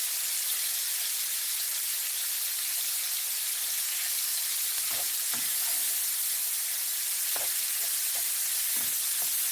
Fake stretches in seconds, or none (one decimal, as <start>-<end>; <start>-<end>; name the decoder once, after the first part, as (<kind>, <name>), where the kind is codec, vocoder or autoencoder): none